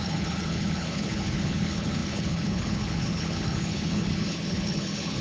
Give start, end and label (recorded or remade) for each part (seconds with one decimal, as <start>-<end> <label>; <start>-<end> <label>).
0.0-5.2 remade